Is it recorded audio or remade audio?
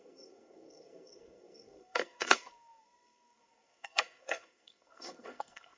remade